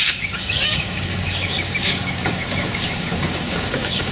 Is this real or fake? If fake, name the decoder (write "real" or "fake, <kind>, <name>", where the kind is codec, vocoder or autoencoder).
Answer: fake, codec, DAC